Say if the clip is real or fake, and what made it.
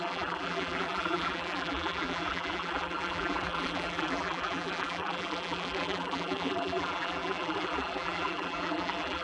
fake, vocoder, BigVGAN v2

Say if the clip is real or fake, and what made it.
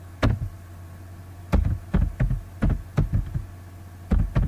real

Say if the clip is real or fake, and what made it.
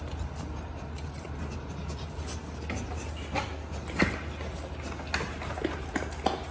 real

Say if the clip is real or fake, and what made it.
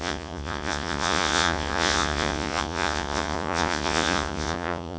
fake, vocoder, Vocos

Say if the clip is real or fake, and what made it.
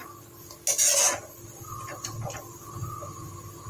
real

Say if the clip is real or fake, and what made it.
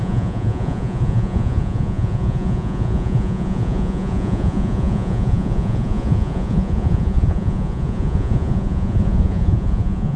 fake, vocoder, Vocos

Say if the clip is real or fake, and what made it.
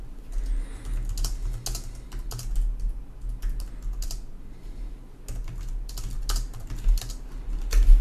real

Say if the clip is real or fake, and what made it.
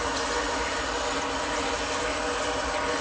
real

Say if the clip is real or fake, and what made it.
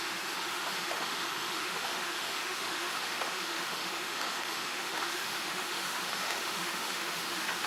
fake, autoencoder, DAC-VAE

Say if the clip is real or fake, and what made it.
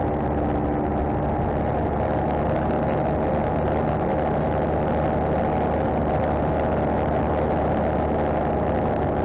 real